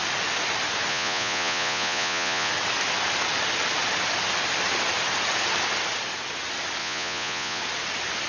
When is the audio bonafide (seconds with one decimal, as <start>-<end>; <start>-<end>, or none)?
0.0-0.9; 2.5-6.8; 7.6-8.3